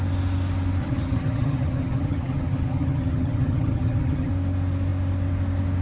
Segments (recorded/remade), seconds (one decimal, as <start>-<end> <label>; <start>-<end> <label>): 0.0-0.8 recorded; 0.8-4.3 remade; 4.3-5.8 recorded